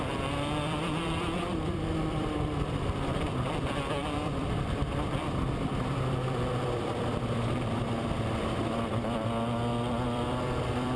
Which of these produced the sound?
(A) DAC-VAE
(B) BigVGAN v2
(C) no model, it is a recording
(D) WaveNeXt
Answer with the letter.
B